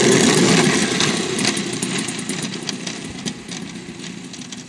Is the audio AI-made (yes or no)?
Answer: no